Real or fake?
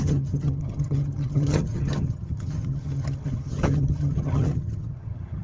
fake